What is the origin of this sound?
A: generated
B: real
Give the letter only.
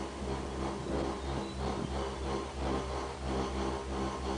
B